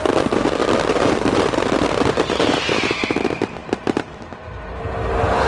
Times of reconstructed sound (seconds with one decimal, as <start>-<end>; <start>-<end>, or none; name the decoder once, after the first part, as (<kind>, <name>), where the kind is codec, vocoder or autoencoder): none